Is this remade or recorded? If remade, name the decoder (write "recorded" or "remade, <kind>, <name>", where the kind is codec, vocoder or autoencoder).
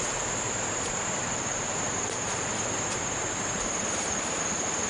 remade, vocoder, BigVGAN v2